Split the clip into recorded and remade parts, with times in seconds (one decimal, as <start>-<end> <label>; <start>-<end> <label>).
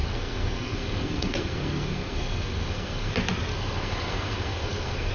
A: 0.0-3.1 remade; 3.1-3.5 recorded; 3.5-5.1 remade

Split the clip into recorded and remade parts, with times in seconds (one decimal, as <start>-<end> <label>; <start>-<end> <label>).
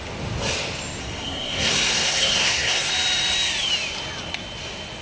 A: 0.0-1.0 recorded; 1.0-2.9 remade; 2.9-5.0 recorded